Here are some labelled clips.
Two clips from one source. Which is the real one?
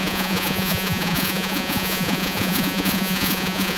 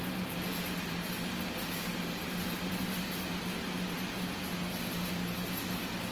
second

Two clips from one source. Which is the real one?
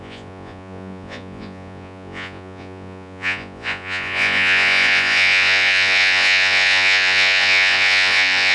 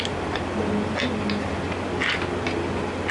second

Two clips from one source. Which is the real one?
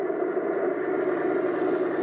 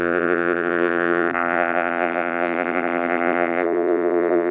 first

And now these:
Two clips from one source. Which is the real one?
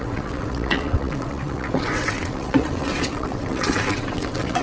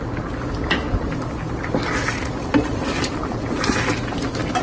second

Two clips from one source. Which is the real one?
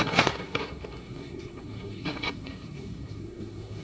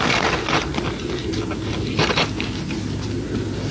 second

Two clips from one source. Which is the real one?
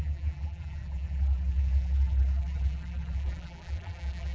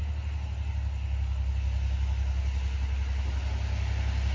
second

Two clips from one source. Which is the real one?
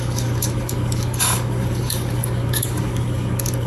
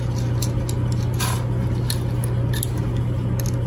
second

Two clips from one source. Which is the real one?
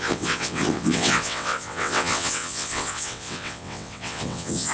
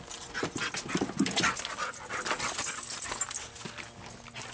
second